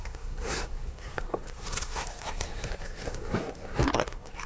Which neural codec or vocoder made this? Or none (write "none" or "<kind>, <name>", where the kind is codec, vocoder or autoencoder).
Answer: codec, SNAC